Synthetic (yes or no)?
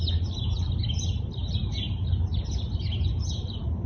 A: no